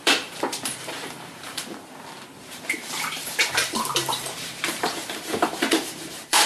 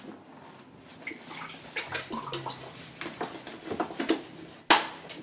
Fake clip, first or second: first